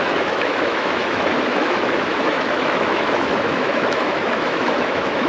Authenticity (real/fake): fake